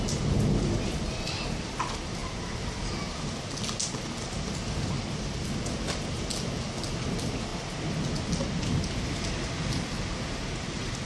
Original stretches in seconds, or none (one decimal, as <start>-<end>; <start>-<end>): 0.0-11.1